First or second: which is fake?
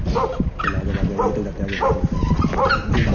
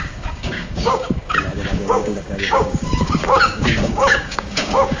second